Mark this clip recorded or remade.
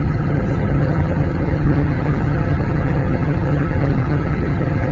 remade